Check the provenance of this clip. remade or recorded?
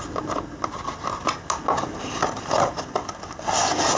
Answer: recorded